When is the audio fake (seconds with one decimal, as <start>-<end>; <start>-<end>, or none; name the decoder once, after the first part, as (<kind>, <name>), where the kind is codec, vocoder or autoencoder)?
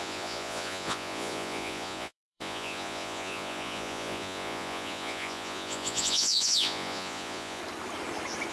0.0-7.6 (vocoder, Vocos)